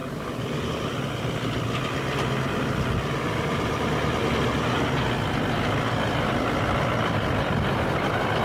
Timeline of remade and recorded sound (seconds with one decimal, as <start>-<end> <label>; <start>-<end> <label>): 0.0-0.7 remade; 0.7-8.4 recorded